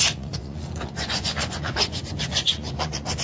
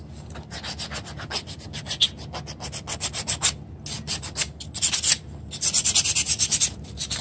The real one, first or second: second